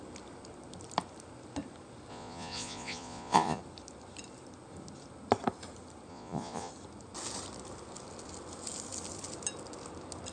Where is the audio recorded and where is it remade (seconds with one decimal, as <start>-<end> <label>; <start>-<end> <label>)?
0.0-2.1 recorded; 2.1-3.6 remade; 3.6-6.1 recorded; 6.1-6.7 remade; 6.7-10.3 recorded